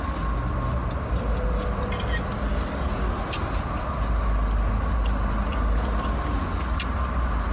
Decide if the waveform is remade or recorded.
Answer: recorded